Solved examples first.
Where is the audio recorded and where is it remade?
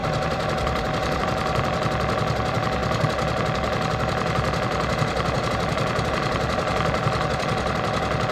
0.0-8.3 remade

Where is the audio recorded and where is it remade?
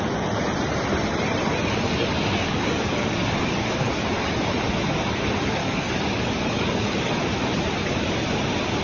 0.0-2.1 recorded; 2.1-4.0 remade; 4.0-5.6 recorded; 5.6-7.1 remade; 7.1-8.8 recorded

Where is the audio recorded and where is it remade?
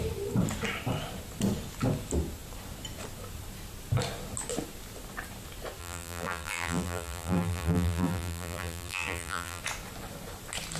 0.0-5.8 recorded; 5.8-9.6 remade; 9.6-10.8 recorded